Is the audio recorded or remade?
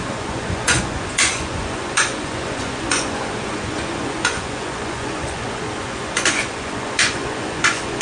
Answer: remade